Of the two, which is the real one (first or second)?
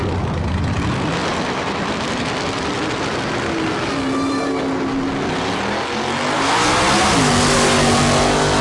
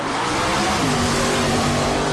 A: first